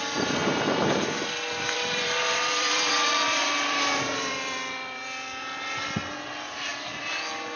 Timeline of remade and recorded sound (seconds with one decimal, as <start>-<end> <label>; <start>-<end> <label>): 0.0-0.4 recorded; 0.4-5.0 remade; 5.0-7.6 recorded